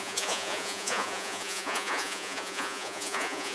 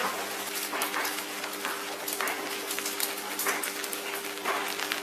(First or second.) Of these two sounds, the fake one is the first